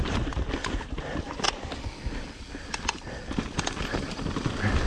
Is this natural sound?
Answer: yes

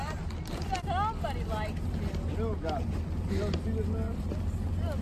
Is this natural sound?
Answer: yes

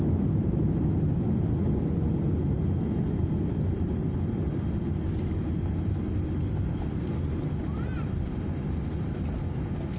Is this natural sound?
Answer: yes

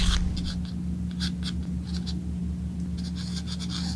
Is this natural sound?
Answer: yes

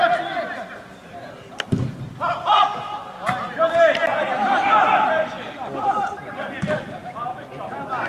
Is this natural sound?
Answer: yes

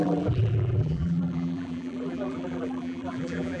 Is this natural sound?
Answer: no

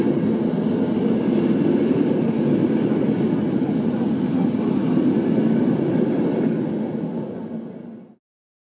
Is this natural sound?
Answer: yes